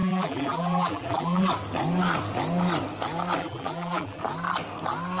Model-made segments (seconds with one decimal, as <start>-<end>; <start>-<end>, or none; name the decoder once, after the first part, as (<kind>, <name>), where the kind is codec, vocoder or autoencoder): 0.0-1.5 (vocoder, BigVGAN v2); 3.4-4.2